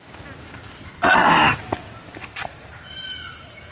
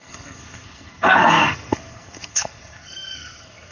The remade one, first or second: second